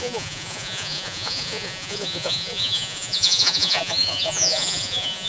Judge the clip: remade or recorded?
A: remade